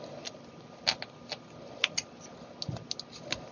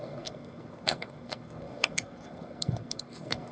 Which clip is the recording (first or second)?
first